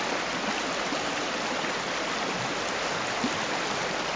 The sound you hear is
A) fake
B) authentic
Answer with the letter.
B